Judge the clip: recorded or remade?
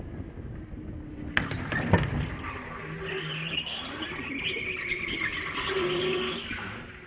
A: recorded